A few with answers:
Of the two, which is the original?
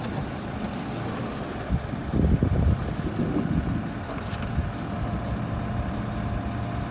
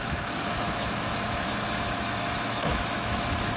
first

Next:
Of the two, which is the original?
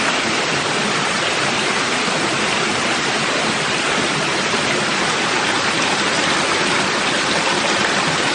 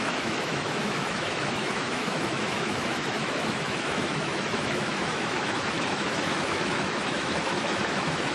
first